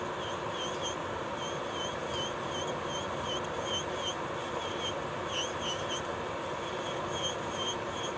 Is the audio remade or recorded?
recorded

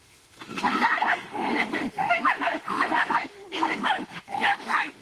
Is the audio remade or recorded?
remade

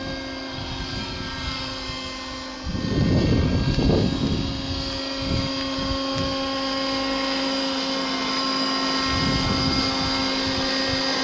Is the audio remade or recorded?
recorded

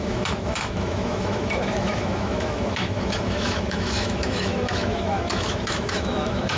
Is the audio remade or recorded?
remade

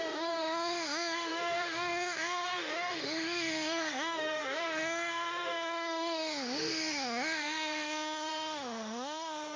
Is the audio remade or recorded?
remade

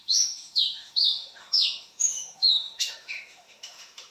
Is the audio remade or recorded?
remade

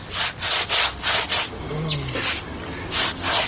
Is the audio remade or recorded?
recorded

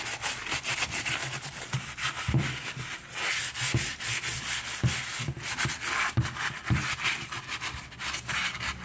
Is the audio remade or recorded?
recorded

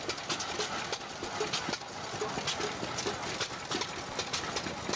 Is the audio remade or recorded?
recorded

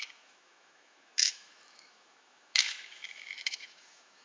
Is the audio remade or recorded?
remade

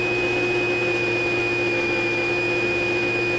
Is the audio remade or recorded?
remade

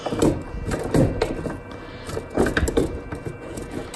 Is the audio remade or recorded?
recorded